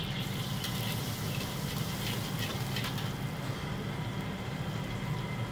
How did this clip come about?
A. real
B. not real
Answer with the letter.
A